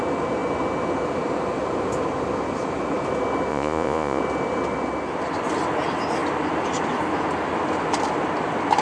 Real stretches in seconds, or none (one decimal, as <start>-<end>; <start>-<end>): 0.0-3.5; 4.2-8.8